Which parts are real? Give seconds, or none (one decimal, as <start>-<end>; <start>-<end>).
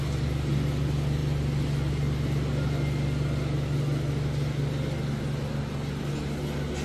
0.0-6.8